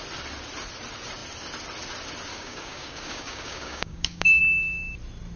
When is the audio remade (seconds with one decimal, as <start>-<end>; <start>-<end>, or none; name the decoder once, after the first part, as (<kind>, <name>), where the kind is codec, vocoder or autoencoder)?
2.3-4.4 (codec, DAC)